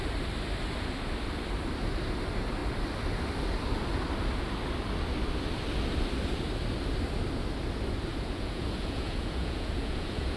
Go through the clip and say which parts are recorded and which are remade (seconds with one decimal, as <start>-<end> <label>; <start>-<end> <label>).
0.0-8.1 recorded; 8.1-10.4 remade